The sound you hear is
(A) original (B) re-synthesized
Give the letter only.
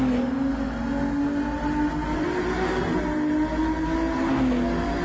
A